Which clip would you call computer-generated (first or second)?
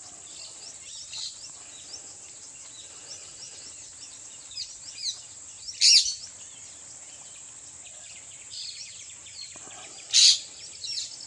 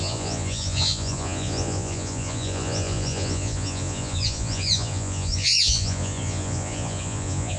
second